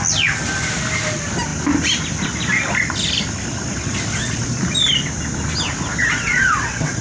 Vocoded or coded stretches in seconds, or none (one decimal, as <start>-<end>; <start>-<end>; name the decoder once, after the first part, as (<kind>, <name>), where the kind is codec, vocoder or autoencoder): 6.0-7.0 (vocoder, WaveNeXt)